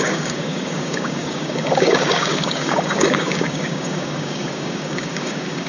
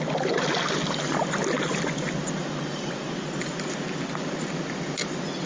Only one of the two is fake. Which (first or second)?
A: first